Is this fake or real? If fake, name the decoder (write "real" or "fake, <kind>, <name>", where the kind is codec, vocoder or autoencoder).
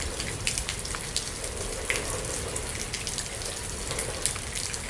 real